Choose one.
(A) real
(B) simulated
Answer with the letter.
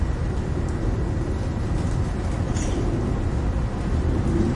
A